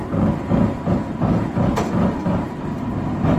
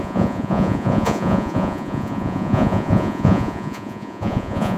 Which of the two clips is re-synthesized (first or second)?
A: second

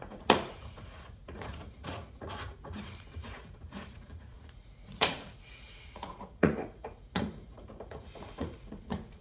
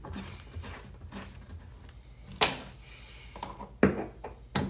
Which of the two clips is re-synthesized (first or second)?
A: first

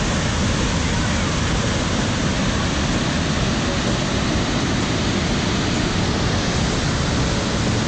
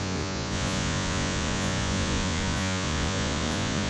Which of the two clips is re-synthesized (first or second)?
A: second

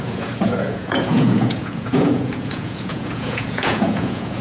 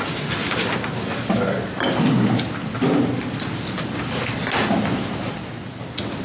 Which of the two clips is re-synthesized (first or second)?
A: first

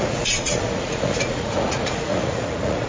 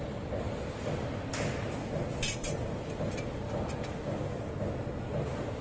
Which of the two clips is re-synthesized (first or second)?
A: first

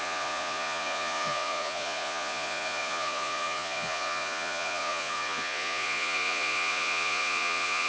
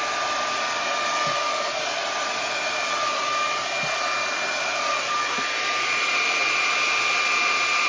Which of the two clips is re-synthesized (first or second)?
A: first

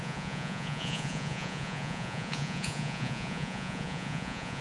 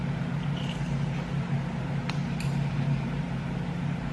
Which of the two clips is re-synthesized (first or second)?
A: first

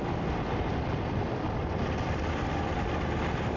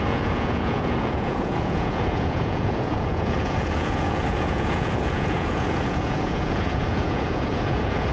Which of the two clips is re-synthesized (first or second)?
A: second